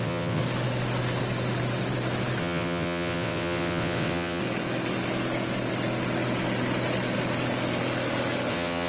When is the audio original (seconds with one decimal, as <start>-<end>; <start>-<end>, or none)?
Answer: 0.4-2.4; 4.4-8.5